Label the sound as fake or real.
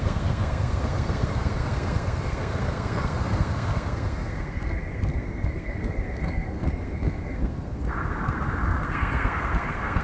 fake